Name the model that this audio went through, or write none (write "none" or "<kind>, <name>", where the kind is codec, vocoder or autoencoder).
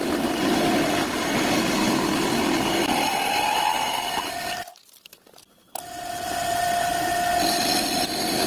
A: none